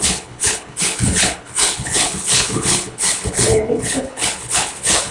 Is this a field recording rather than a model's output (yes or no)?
no